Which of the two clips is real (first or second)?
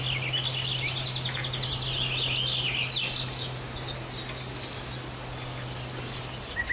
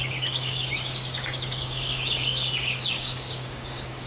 first